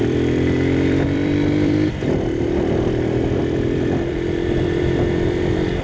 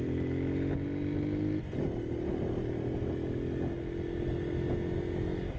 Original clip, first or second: second